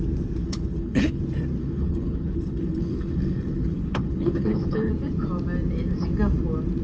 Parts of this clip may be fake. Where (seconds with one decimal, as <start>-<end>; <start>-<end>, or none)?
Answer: 0.4-1.2; 1.6-4.9